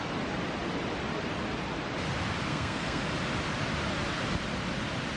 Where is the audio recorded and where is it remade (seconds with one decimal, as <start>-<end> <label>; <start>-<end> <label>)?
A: 0.0-2.5 recorded; 2.5-3.0 remade; 3.0-5.2 recorded